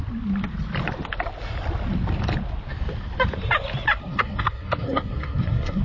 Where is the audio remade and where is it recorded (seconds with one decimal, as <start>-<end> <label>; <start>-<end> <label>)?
0.0-4.0 recorded; 4.0-5.8 remade